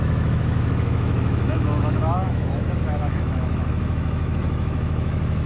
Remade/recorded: remade